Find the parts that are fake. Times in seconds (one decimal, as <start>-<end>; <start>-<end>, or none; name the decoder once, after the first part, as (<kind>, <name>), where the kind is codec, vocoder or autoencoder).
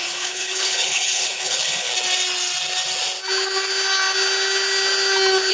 0.0-1.9 (codec, HILCodec)